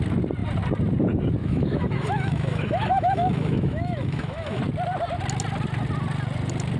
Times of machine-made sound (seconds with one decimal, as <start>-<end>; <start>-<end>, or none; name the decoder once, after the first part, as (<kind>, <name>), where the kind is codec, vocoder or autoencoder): 1.4-4.6 (autoencoder, DAC-VAE)